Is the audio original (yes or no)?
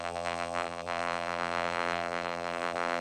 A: no